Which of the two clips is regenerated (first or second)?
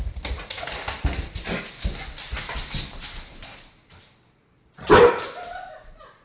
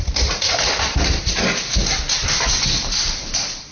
second